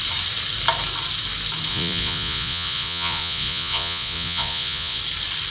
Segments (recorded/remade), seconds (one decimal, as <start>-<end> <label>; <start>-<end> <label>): 0.0-1.7 recorded; 1.7-5.0 remade; 5.0-5.5 recorded